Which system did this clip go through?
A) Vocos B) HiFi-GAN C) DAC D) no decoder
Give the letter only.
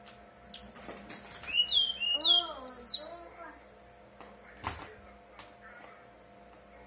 D